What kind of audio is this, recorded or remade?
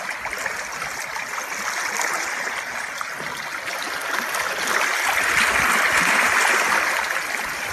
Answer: recorded